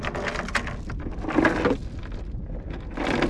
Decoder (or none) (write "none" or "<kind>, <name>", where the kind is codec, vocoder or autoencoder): none